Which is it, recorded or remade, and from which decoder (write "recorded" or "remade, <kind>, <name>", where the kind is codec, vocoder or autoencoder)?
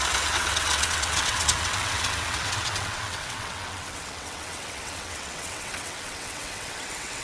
remade, vocoder, WaveNeXt